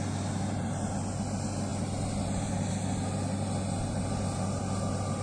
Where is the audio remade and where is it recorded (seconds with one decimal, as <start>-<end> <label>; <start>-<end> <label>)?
0.0-5.2 recorded